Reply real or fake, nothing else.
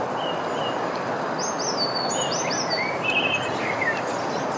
real